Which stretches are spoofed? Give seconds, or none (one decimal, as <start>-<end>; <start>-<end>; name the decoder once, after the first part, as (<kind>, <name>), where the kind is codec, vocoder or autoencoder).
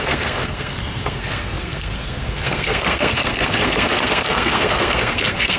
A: 0.0-5.6 (codec, SNAC)